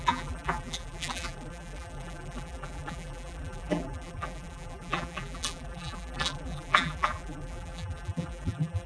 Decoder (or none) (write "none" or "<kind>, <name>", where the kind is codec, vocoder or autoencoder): vocoder, BigVGAN v2